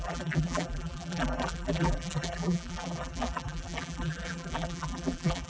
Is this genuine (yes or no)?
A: no